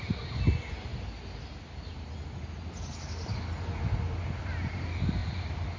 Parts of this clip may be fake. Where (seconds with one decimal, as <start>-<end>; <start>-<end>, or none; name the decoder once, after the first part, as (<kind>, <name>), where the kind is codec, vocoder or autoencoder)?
none